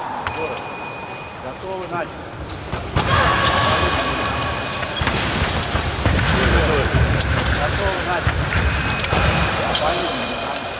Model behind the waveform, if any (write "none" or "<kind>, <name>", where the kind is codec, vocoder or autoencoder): vocoder, BigVGAN v2